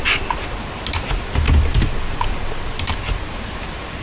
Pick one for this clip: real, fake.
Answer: real